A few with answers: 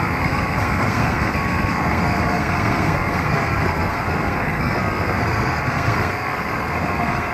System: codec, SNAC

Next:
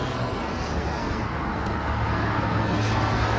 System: codec, SNAC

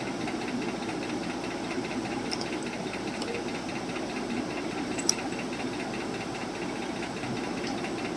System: none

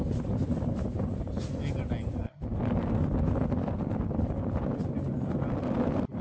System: none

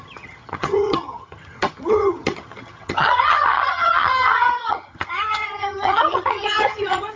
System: vocoder, HiFi-GAN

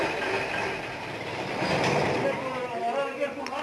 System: none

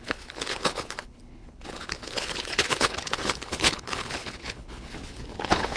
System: codec, HILCodec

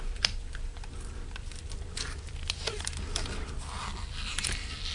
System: vocoder, BigVGAN v2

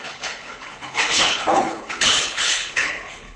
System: codec, HILCodec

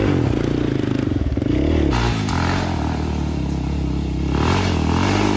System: none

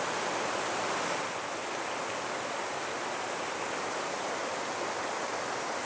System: none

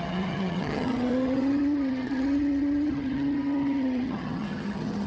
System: vocoder, HiFi-GAN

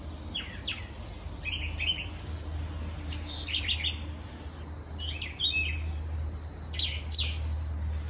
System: none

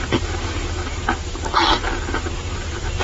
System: none